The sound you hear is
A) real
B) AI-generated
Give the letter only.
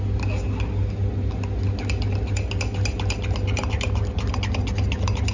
A